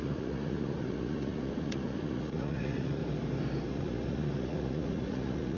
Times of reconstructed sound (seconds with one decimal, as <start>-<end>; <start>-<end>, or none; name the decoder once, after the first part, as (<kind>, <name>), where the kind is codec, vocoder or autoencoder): 0.0-3.0 (vocoder, Vocos); 3.7-5.6